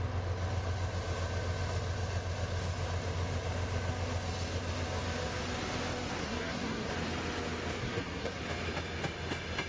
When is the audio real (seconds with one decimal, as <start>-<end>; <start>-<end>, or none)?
0.0-6.2; 6.9-7.8; 8.4-9.7